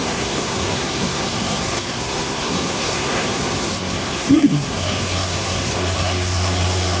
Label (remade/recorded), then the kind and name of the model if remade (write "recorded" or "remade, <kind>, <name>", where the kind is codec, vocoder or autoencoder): remade, codec, SNAC